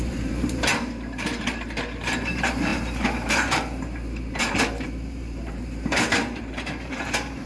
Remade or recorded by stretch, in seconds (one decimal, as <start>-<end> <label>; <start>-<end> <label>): 0.0-7.5 remade